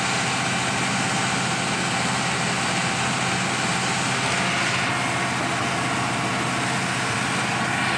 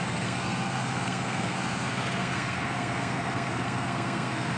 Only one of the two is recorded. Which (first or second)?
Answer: first